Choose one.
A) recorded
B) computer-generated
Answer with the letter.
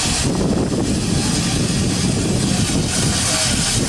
A